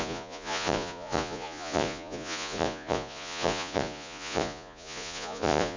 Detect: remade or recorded remade